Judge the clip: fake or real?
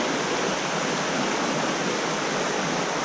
real